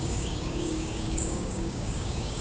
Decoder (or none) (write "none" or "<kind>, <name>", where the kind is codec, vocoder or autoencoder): codec, DAC